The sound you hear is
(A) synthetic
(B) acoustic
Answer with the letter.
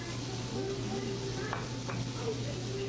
B